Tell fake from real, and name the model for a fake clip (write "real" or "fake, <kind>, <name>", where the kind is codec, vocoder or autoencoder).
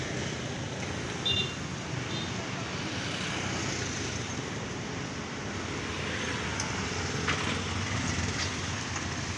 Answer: real